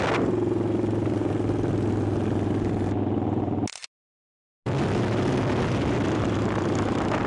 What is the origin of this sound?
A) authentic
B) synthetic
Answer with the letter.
A